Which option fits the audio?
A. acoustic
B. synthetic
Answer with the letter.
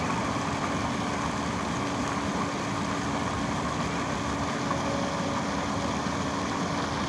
A